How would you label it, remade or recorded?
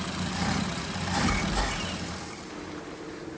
recorded